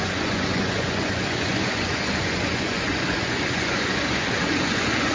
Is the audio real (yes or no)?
no